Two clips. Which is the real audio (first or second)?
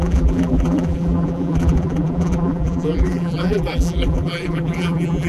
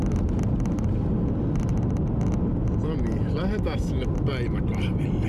second